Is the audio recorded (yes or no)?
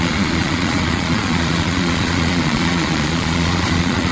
no